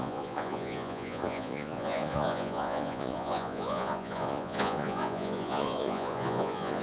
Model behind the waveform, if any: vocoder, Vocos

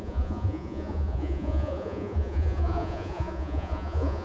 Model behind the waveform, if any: vocoder, Vocos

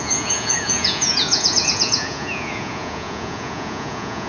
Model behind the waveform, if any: vocoder, Vocos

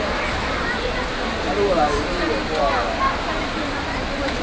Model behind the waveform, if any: none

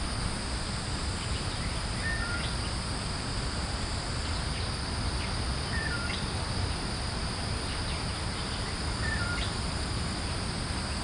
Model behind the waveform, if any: none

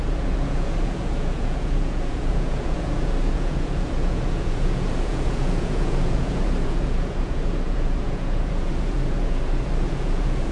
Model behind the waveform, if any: vocoder, Vocos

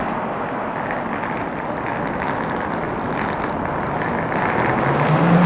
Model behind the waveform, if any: none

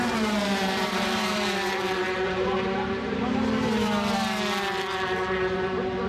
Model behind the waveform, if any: vocoder, BigVGAN v2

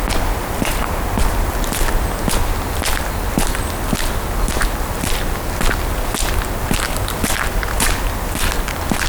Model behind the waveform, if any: none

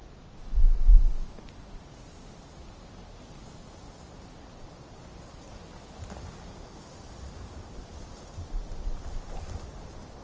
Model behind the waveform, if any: none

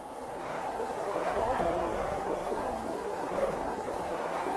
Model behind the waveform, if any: codec, SNAC